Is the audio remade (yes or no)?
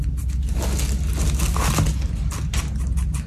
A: no